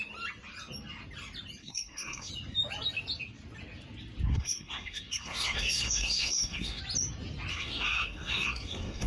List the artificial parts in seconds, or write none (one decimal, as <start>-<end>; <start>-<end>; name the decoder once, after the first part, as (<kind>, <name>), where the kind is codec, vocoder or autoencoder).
1.6-2.3 (codec, SNAC); 4.3-6.8; 7.5-9.1